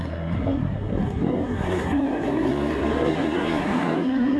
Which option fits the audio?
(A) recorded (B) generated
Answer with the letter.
B